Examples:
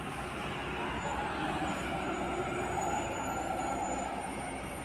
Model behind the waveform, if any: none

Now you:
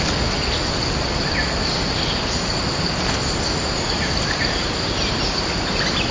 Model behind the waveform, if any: none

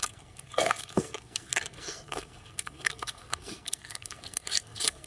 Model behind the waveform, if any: codec, SNAC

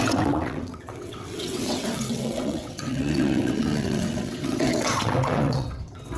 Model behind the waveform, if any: vocoder, WaveNeXt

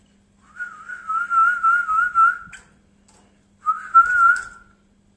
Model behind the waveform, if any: none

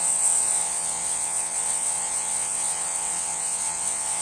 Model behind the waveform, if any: vocoder, WaveNeXt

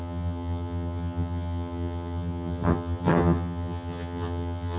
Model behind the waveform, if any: vocoder, HiFi-GAN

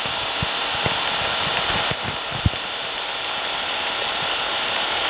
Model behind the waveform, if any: vocoder, BigVGAN v2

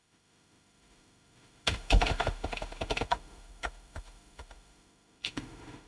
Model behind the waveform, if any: autoencoder, DAC-VAE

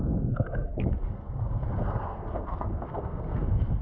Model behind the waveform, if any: codec, SNAC